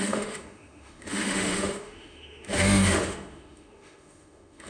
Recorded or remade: remade